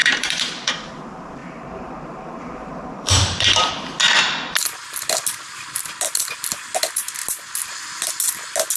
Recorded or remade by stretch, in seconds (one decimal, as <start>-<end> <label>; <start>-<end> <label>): 0.0-0.9 remade; 0.9-1.4 recorded; 1.4-3.7 remade; 3.7-8.8 recorded